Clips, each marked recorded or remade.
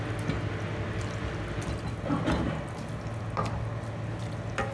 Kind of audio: recorded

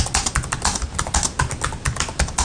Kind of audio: recorded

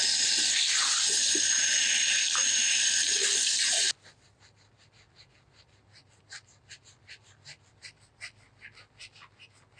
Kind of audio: recorded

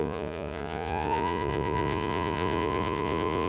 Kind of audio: remade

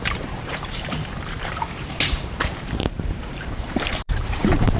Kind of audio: remade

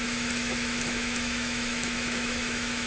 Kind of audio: remade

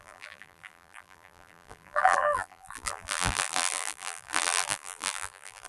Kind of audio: remade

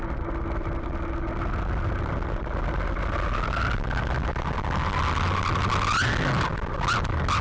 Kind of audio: recorded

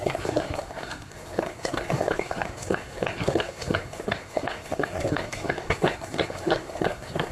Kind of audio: remade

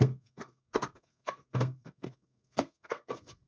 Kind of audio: remade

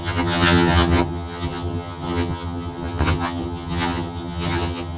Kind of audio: remade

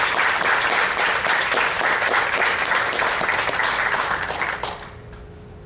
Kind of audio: recorded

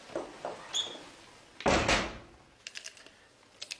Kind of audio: recorded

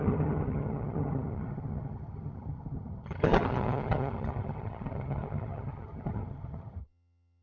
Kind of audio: remade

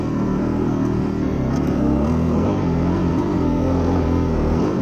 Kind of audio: remade